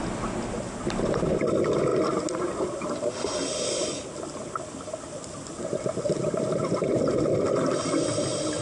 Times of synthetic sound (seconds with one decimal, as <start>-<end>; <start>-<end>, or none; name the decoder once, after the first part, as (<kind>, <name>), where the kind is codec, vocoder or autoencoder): none